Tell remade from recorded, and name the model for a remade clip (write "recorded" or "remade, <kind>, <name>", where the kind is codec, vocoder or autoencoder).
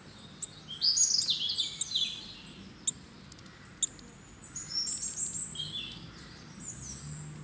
recorded